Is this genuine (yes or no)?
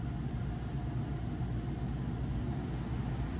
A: yes